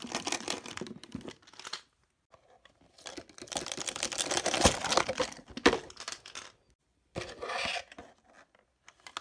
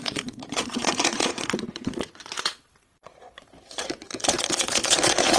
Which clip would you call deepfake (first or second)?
second